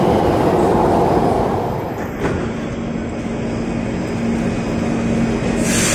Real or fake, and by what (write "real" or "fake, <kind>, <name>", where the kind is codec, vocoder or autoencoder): real